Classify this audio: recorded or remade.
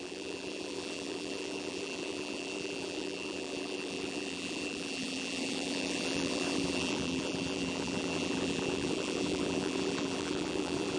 remade